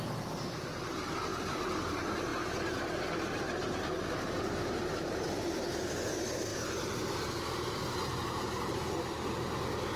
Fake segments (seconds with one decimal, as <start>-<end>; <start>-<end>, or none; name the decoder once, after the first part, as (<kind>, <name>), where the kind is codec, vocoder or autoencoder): 1.3-1.9 (vocoder, BigVGAN v2)